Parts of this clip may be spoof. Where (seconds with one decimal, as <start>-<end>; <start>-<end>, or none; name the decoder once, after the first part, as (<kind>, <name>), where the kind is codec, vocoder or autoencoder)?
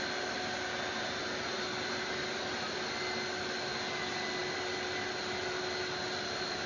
none